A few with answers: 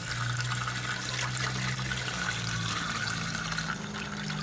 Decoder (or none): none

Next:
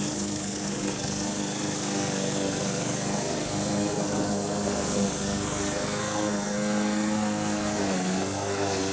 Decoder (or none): codec, SNAC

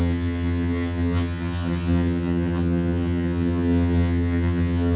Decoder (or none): vocoder, HiFi-GAN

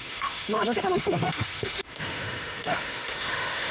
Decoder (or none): autoencoder, DAC-VAE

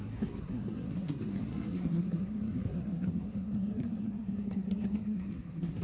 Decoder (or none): codec, SNAC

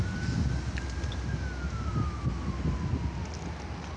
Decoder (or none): none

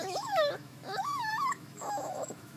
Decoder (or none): autoencoder, DAC-VAE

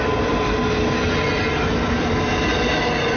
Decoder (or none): none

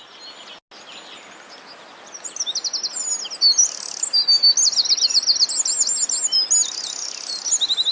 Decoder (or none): none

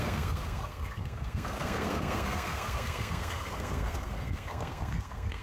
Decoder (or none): codec, SNAC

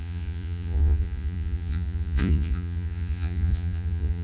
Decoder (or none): vocoder, Vocos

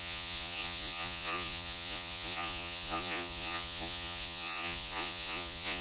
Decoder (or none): vocoder, Vocos